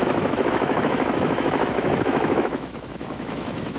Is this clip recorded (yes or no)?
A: no